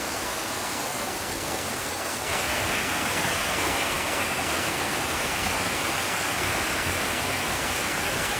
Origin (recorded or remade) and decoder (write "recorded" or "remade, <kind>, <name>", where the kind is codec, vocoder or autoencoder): remade, codec, SNAC